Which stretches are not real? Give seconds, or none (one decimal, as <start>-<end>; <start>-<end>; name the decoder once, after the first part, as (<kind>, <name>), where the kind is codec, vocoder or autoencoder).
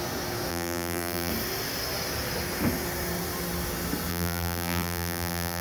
0.5-1.3 (vocoder, BigVGAN v2); 4.1-5.6